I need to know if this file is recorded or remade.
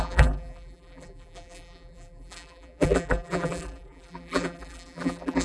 remade